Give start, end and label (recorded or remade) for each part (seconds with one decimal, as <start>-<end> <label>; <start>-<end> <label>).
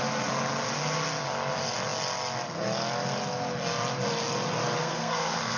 0.0-4.8 recorded; 4.8-5.6 remade